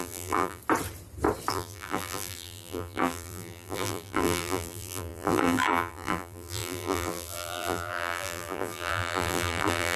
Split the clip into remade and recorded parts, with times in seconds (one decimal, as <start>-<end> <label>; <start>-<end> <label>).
0.0-0.6 remade; 0.6-1.5 recorded; 1.5-10.0 remade